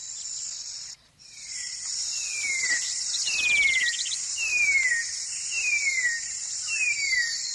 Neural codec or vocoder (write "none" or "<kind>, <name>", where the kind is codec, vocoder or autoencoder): none